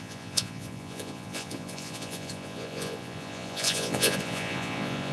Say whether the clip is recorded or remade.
remade